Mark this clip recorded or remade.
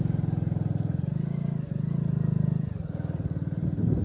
recorded